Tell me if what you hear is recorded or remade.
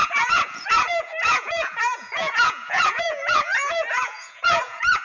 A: remade